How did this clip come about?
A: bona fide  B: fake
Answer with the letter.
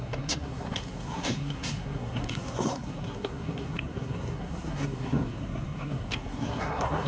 B